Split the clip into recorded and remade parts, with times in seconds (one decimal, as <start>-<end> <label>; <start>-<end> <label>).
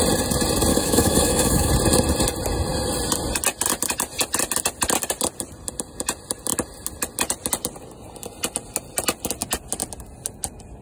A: 0.0-0.7 recorded; 0.7-1.7 remade; 1.7-10.8 recorded